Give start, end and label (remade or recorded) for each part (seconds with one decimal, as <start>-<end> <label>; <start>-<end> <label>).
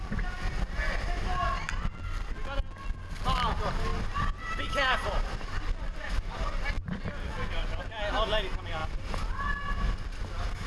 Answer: 0.0-3.9 recorded; 3.9-6.1 remade; 6.1-8.8 recorded; 8.8-9.3 remade; 9.3-10.7 recorded